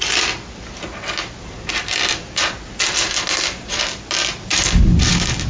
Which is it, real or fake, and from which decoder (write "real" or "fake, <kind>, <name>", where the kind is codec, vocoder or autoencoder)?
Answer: real